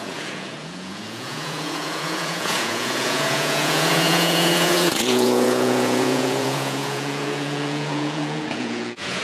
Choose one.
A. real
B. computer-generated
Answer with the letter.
B